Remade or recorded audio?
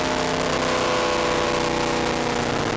recorded